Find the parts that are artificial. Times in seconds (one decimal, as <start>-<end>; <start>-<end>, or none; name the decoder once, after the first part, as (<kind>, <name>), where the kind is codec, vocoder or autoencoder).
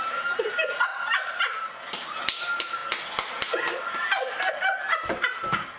0.0-0.9 (vocoder, BigVGAN v2); 1.9-5.8